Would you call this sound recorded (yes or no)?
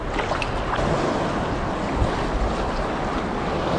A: yes